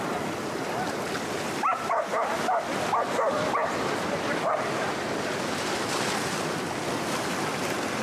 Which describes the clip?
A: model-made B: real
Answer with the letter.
A